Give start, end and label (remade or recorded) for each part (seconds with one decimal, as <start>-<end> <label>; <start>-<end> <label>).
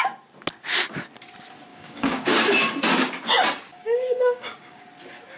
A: 0.0-1.7 recorded; 1.7-2.7 remade; 2.7-3.7 recorded; 3.7-4.8 remade; 4.8-5.4 recorded